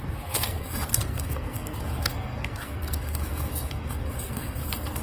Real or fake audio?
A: fake